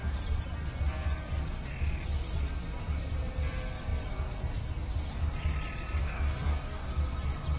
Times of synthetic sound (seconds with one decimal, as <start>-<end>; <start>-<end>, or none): 6.0-6.9

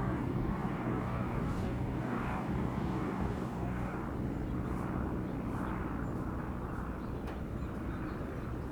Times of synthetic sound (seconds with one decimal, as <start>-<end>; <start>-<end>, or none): 0.0-4.0

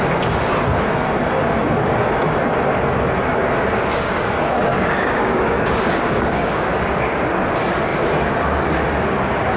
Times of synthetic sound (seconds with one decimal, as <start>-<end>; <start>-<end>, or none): 3.9-6.7

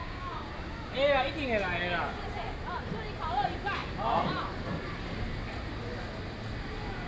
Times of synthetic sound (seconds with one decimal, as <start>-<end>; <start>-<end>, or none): 0.0-0.5

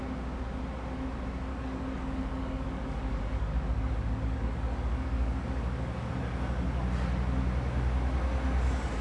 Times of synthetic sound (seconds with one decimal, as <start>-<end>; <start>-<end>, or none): 1.5-6.1